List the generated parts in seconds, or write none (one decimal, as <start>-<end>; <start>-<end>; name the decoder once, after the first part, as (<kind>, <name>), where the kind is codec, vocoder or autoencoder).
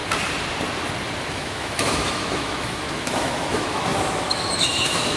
1.3-5.2 (autoencoder, DAC-VAE)